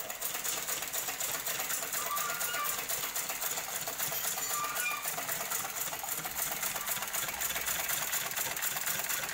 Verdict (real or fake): real